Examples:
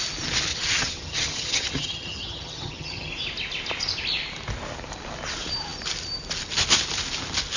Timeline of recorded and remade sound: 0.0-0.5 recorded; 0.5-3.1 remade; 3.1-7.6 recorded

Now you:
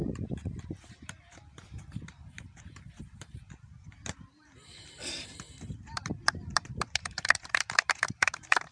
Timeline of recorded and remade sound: 0.0-8.7 remade

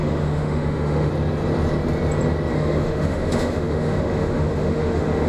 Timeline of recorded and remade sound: 0.0-1.1 remade; 1.1-2.5 recorded; 2.5-5.3 remade

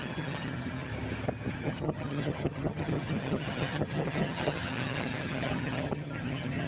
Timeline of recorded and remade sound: 0.0-0.9 remade; 0.9-1.5 recorded; 1.5-6.7 remade

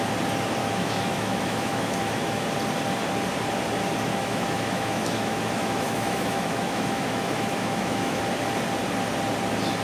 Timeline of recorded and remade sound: 0.0-0.6 recorded; 0.6-2.5 remade; 2.5-4.1 recorded; 4.1-8.2 remade; 8.2-9.8 recorded

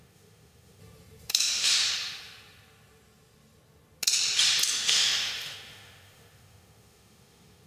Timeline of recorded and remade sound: 0.0-0.8 remade; 0.8-1.3 recorded; 1.3-1.8 remade; 1.8-4.7 recorded; 4.7-7.7 remade

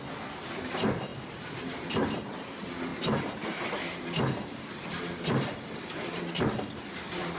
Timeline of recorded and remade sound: 0.0-1.1 recorded; 1.1-2.3 remade; 2.3-2.9 recorded; 2.9-7.4 remade

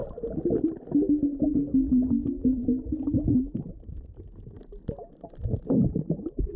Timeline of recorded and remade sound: 0.0-5.4 recorded; 5.4-6.6 remade